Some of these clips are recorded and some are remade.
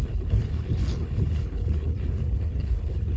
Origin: remade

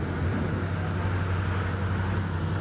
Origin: recorded